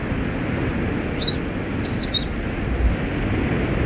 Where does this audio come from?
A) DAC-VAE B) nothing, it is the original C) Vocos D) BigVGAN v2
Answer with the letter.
B